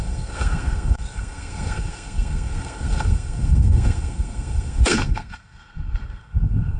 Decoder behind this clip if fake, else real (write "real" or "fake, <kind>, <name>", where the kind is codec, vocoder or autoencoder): fake, codec, SNAC